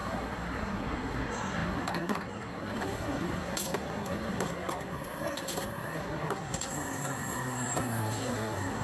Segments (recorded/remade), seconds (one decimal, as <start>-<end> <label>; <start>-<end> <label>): 0.0-8.8 remade